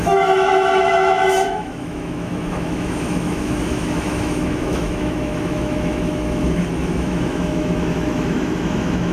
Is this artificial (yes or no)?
yes